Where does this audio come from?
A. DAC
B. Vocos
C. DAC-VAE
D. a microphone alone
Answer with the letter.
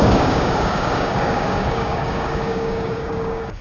A